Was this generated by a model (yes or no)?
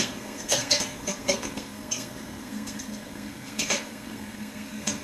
yes